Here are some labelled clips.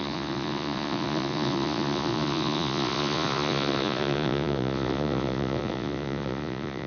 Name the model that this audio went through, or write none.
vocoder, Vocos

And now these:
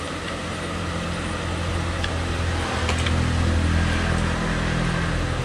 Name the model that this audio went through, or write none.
none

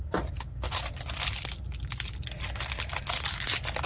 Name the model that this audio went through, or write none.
none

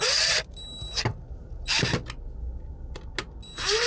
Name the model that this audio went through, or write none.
none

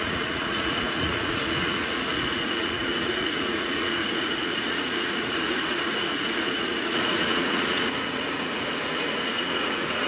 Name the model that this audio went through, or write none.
vocoder, Vocos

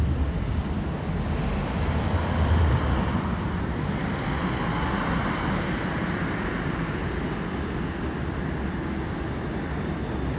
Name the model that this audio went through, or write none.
none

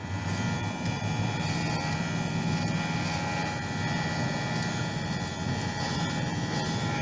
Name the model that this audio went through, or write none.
vocoder, BigVGAN v2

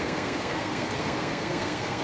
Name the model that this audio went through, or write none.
codec, SNAC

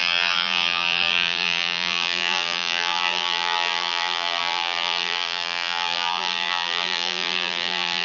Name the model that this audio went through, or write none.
vocoder, BigVGAN v2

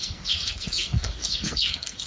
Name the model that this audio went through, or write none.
codec, SNAC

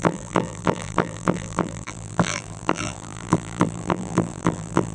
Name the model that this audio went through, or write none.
vocoder, BigVGAN v2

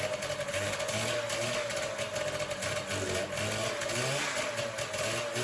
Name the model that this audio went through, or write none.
none